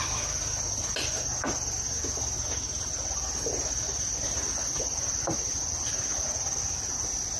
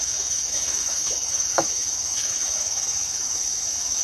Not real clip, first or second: second